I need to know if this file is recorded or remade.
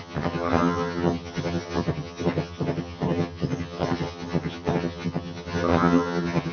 remade